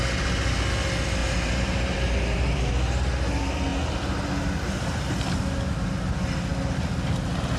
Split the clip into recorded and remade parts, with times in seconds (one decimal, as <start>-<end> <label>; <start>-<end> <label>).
0.0-1.2 recorded; 1.2-2.7 remade; 2.7-7.6 recorded